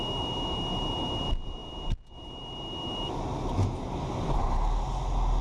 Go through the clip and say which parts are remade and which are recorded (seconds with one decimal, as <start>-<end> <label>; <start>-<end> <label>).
0.0-5.4 recorded

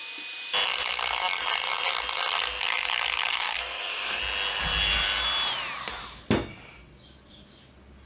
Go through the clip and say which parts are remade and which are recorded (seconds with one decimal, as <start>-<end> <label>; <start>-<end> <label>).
0.0-3.3 recorded; 3.3-4.2 remade; 4.2-8.1 recorded

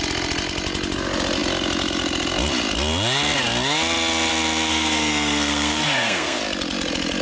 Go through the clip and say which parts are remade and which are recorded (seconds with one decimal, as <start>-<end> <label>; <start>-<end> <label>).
0.0-4.7 recorded; 4.7-6.4 remade; 6.4-7.2 recorded

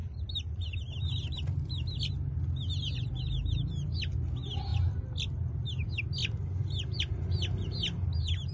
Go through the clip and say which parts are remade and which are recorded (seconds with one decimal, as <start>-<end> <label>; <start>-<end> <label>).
0.0-8.5 recorded

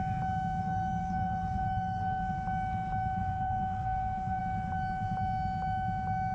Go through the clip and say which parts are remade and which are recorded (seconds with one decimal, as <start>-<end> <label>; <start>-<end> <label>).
0.0-0.6 recorded; 0.6-2.3 remade; 2.3-3.2 recorded; 3.2-4.4 remade; 4.4-6.3 recorded

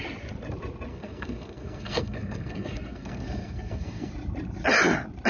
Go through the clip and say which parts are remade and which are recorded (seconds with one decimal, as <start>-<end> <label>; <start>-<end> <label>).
0.0-0.9 recorded; 0.9-4.1 remade; 4.1-5.3 recorded